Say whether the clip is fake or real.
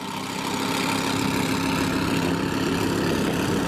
real